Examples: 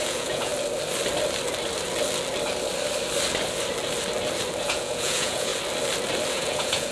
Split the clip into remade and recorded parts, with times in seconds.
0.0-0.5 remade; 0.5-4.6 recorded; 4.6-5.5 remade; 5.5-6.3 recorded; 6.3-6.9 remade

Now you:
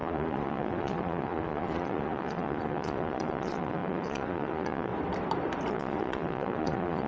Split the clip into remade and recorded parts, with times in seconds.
0.0-4.9 remade; 4.9-5.7 recorded; 5.7-7.1 remade

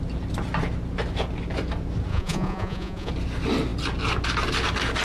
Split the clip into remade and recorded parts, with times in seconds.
0.0-2.1 recorded; 2.1-3.1 remade; 3.1-5.0 recorded

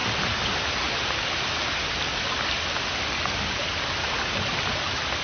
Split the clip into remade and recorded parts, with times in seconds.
0.0-5.2 recorded

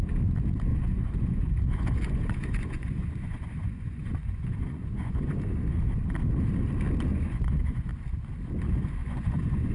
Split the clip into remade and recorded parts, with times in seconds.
0.0-0.7 recorded; 0.7-5.4 remade; 5.4-7.1 recorded; 7.1-7.9 remade; 7.9-9.0 recorded; 9.0-9.7 remade